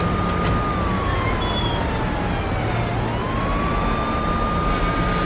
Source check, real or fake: real